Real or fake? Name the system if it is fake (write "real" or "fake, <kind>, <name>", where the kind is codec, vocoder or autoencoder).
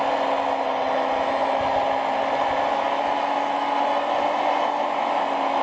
real